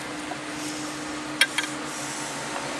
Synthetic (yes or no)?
no